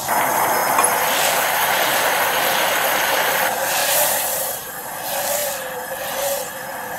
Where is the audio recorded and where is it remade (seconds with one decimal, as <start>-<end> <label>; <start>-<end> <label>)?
0.0-3.8 recorded; 3.8-4.7 remade; 4.7-7.0 recorded